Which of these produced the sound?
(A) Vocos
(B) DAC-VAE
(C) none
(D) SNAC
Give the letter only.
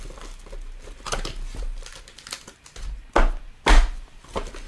C